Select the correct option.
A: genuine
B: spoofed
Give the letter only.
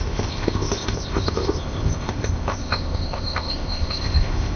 B